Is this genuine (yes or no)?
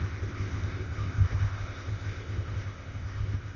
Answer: no